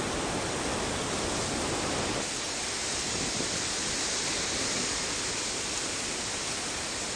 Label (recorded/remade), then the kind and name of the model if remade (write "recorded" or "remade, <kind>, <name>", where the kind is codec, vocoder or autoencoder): recorded